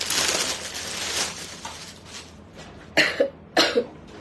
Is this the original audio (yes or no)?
yes